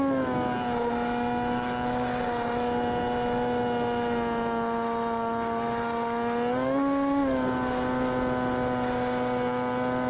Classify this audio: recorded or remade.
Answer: recorded